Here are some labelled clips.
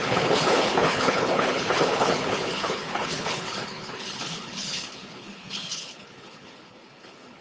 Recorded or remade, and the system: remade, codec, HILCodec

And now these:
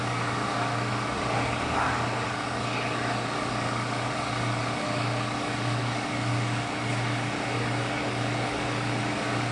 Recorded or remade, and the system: remade, codec, DAC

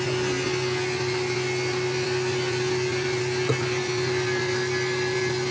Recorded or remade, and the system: recorded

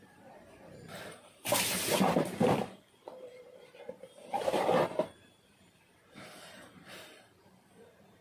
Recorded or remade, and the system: remade, vocoder, BigVGAN v2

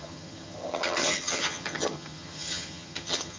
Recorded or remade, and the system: remade, vocoder, HiFi-GAN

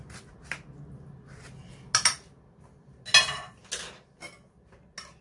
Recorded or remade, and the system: recorded